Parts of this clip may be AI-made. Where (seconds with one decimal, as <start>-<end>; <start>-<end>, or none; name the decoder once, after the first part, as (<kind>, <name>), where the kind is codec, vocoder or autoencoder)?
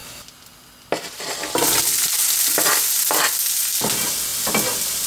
none